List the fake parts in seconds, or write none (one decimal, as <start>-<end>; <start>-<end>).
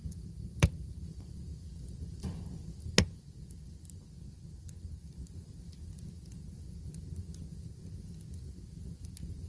none